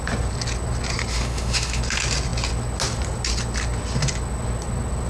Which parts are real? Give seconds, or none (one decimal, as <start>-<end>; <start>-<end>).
0.0-1.1; 1.8-5.1